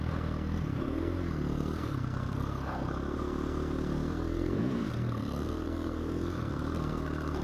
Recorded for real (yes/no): no